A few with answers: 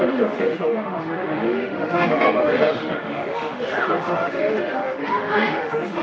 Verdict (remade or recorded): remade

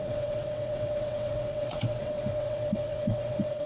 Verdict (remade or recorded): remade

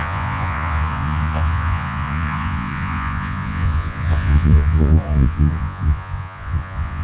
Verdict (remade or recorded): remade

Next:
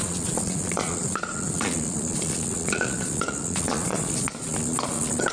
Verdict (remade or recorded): remade